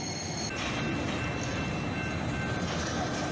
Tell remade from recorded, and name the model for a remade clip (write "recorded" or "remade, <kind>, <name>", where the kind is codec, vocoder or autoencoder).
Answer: recorded